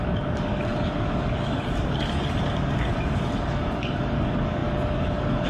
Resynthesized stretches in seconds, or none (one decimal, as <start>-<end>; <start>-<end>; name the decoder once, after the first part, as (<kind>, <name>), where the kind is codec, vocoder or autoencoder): 0.0-5.5 (codec, DAC)